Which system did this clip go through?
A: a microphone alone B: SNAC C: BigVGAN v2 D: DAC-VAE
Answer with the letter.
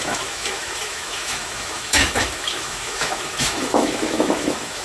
D